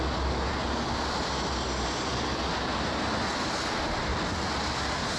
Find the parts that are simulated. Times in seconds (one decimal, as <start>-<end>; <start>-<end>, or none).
4.1-4.6